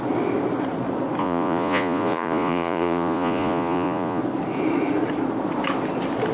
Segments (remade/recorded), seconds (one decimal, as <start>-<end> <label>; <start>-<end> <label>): 0.0-1.2 recorded; 1.2-4.2 remade; 4.2-6.3 recorded